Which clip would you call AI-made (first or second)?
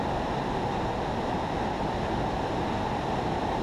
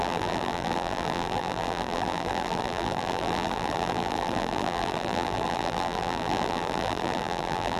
second